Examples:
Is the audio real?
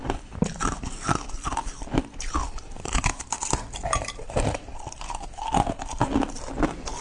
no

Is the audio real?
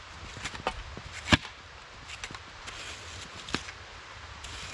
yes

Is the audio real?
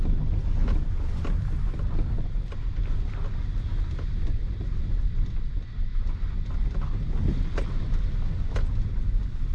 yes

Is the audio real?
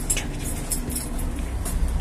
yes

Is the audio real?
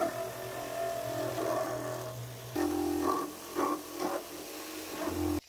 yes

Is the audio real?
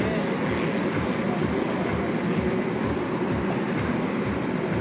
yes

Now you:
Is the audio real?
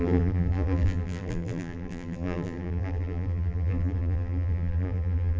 no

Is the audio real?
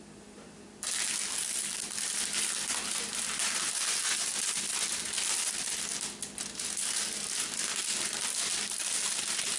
yes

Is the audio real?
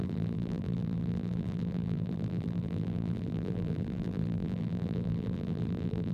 no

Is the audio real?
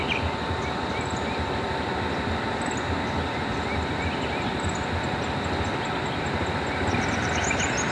yes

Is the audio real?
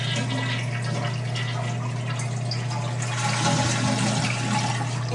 yes